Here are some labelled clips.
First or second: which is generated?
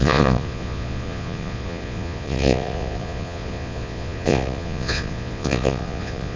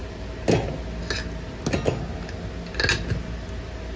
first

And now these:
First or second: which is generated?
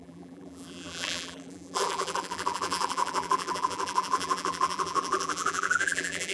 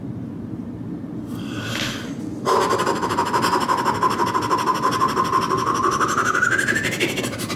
first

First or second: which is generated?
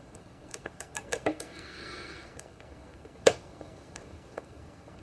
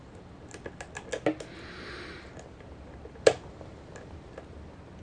first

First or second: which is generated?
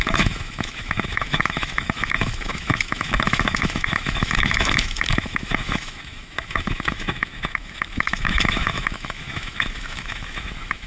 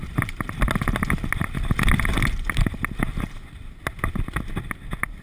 first